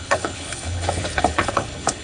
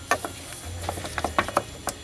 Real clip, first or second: second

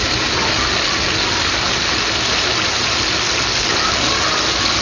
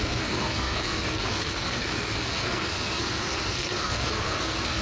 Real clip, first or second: first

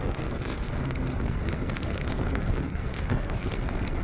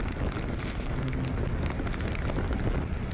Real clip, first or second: second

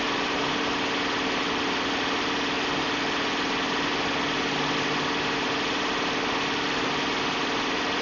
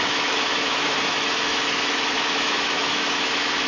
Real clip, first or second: first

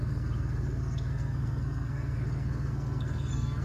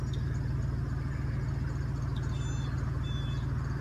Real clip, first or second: second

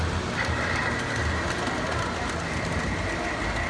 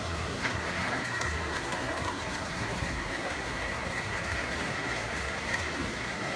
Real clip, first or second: first